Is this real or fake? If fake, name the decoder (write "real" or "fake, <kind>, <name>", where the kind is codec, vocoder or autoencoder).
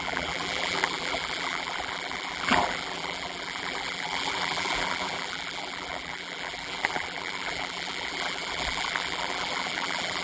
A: fake, vocoder, BigVGAN v2